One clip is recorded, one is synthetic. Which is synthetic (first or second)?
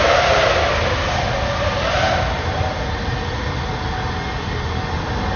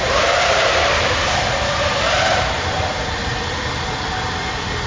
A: second